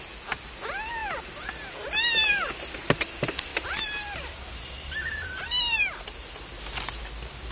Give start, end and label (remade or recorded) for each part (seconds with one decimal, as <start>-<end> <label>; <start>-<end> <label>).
0.0-3.5 recorded; 3.5-6.8 remade; 6.8-7.5 recorded